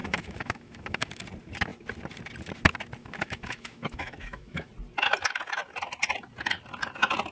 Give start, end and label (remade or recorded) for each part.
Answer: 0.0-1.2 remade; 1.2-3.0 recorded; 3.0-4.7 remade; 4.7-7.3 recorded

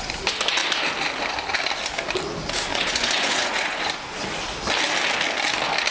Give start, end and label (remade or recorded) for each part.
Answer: 0.0-2.7 recorded; 2.7-3.9 remade; 3.9-5.9 recorded

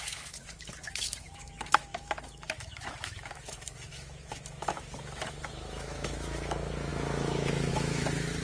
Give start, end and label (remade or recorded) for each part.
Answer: 0.0-8.4 remade

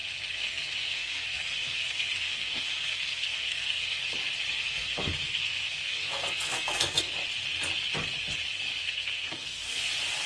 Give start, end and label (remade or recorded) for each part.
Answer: 0.0-4.0 remade; 4.0-4.5 recorded; 4.5-7.1 remade; 7.1-8.8 recorded; 8.8-9.9 remade; 9.9-10.3 recorded

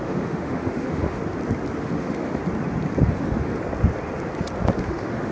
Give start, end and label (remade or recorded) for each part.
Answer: 0.0-1.2 remade; 1.2-1.8 recorded; 1.8-2.4 remade; 2.4-3.1 recorded; 3.1-3.5 remade; 3.5-4.8 recorded; 4.8-5.3 remade

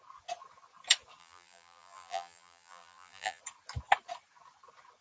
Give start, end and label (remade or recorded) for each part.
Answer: 0.0-1.2 recorded; 1.2-3.4 remade; 3.4-5.0 recorded